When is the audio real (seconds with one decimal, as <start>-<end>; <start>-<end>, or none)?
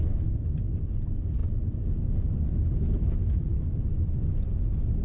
0.0-5.0